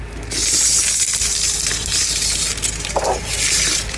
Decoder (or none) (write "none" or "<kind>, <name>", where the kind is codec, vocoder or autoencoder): none